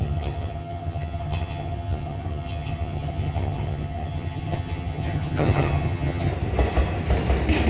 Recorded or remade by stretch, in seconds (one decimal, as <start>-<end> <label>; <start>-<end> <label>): 0.0-6.3 remade; 6.3-7.7 recorded